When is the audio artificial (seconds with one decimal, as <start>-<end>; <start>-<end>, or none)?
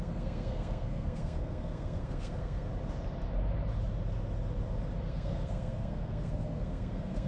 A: 0.0-2.7; 5.0-7.3